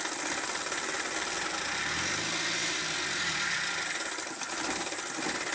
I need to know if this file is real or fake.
real